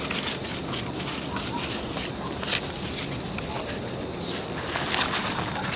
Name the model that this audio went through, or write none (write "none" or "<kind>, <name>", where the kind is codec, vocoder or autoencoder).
none